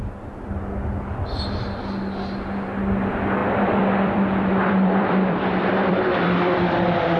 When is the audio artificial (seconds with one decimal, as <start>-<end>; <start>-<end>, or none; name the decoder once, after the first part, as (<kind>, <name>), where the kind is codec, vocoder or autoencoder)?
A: 3.4-7.2 (vocoder, BigVGAN v2)